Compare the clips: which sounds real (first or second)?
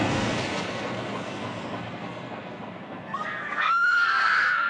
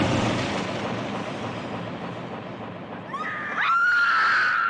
second